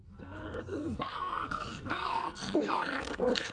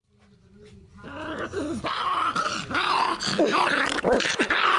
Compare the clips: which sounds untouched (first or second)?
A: second